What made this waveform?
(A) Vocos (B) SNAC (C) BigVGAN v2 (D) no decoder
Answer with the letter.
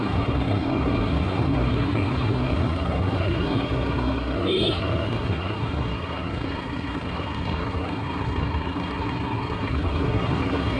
B